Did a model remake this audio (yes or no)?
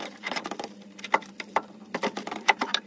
yes